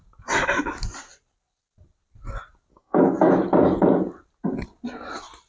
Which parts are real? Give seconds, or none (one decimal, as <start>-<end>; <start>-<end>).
0.0-2.7; 3.3-5.5